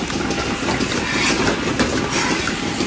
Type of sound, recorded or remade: recorded